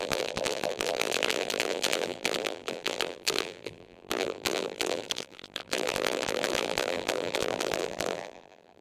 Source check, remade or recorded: remade